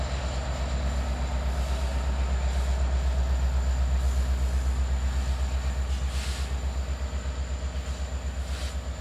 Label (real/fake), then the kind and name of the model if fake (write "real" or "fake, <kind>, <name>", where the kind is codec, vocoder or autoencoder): real